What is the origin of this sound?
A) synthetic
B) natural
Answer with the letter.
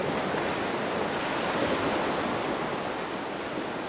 B